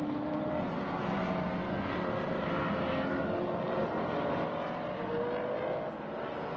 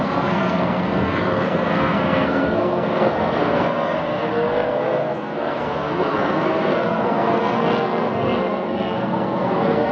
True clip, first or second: first